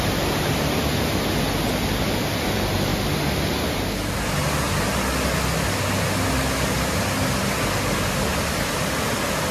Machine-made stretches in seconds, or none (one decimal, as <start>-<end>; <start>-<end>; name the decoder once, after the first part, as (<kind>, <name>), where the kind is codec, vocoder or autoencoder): none